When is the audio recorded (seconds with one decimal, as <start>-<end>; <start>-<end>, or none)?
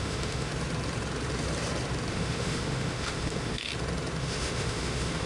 0.5-2.1; 3.7-4.2